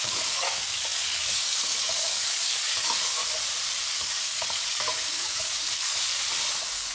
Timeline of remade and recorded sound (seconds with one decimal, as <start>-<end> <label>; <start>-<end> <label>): 0.0-3.2 remade; 3.2-3.9 recorded; 3.9-6.1 remade; 6.1-6.9 recorded